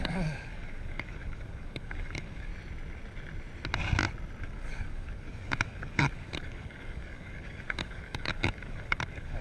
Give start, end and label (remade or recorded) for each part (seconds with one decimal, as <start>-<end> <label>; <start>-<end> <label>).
0.0-2.5 remade; 2.5-4.4 recorded; 4.4-9.4 remade